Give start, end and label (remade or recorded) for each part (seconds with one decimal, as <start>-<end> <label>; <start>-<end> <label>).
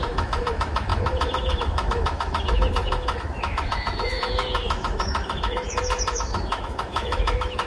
0.0-7.7 remade